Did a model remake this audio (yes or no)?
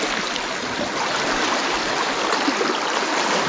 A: no